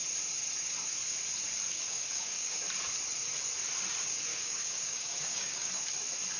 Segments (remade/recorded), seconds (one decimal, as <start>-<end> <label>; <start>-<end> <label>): 0.0-1.7 recorded; 1.7-2.6 remade; 2.6-4.3 recorded; 4.3-5.7 remade; 5.7-6.4 recorded